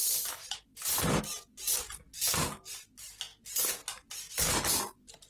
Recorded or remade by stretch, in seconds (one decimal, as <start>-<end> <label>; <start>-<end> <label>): 0.0-1.2 remade; 1.2-5.3 recorded